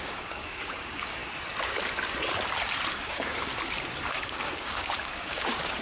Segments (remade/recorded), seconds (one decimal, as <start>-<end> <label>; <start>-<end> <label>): 0.0-1.2 remade; 1.2-2.9 recorded; 2.9-3.5 remade; 3.5-4.1 recorded; 4.1-5.8 remade